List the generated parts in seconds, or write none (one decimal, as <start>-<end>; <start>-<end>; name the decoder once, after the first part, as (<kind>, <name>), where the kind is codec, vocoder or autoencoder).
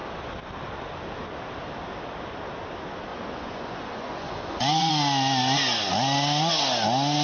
3.1-4.9 (vocoder, Vocos)